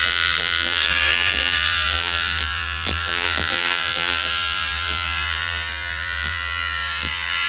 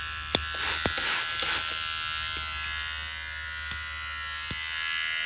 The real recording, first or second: second